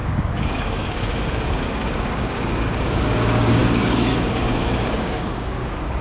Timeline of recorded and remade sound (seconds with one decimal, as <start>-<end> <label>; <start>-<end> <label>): 0.0-6.0 remade